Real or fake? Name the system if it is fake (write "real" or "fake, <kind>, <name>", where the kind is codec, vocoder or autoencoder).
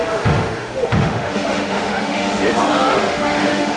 fake, autoencoder, DAC-VAE